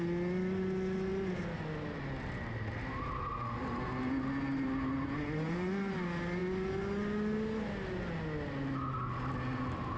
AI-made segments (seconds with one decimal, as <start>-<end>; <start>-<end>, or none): none